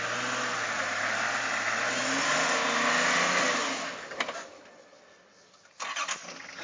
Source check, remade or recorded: recorded